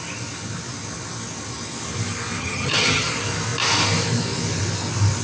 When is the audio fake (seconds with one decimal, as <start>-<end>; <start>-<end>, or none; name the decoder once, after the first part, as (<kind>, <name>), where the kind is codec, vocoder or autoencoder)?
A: 2.4-3.1 (vocoder, HiFi-GAN)